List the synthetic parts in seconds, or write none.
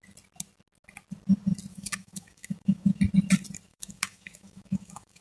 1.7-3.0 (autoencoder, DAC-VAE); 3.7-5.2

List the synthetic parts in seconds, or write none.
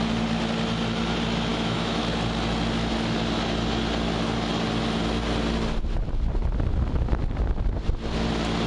1.5-2.0 (autoencoder, DAC-VAE)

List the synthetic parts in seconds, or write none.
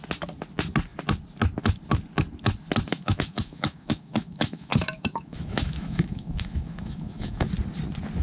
2.9-7.5 (autoencoder, DAC-VAE)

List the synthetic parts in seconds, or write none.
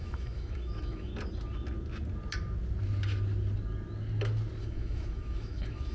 0.0-1.1 (autoencoder, DAC-VAE); 4.6-5.9